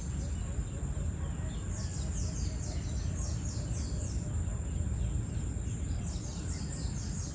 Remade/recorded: recorded